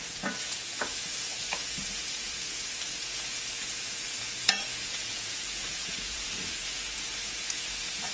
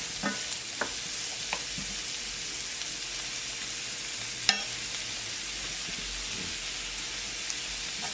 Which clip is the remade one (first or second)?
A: first